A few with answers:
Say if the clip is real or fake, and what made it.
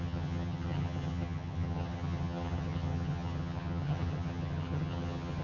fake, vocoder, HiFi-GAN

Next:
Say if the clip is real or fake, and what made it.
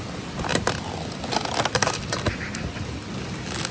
real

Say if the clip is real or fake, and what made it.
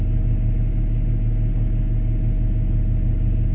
real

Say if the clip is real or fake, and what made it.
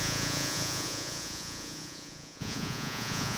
fake, vocoder, Vocos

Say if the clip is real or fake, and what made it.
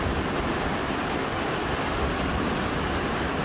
real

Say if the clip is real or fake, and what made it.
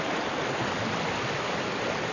real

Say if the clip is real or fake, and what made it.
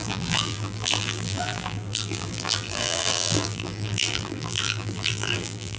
fake, vocoder, BigVGAN v2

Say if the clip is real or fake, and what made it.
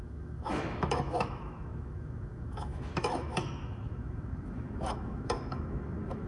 fake, autoencoder, DAC-VAE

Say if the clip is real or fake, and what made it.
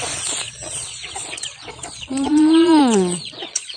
fake, vocoder, Vocos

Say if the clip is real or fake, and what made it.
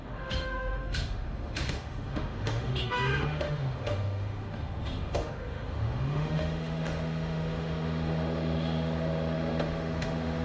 fake, autoencoder, DAC-VAE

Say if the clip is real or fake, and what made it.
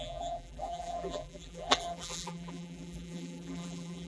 fake, vocoder, BigVGAN v2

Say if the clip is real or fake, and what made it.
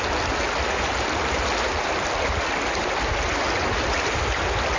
real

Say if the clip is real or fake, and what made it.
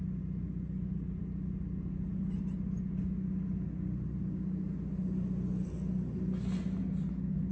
real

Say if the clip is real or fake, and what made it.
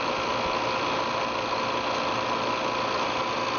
real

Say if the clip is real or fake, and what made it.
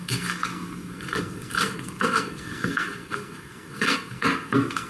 fake, codec, SNAC